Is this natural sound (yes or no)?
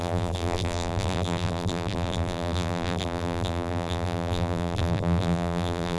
no